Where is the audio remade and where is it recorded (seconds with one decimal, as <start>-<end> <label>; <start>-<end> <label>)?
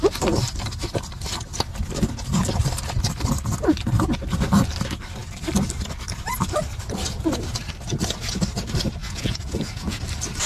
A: 0.0-9.0 recorded; 9.0-10.0 remade; 10.0-10.5 recorded